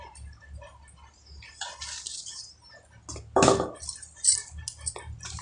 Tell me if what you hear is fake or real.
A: real